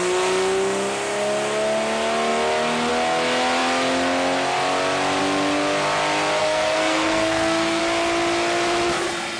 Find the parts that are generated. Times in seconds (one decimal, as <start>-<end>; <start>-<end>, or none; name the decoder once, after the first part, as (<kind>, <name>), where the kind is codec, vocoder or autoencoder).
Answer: 6.4-7.8 (codec, SNAC)